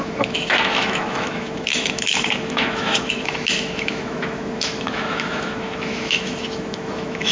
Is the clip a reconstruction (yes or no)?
yes